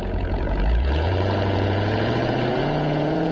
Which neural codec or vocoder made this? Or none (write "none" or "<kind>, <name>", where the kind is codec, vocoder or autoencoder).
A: vocoder, Vocos